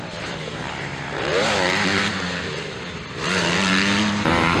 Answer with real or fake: fake